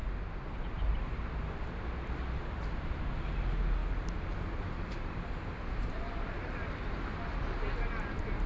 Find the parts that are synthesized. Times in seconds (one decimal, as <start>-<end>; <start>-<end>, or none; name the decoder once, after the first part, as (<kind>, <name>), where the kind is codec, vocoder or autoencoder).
none